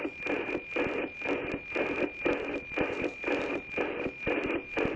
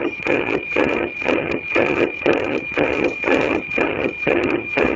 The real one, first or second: first